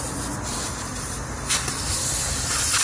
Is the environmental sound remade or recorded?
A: remade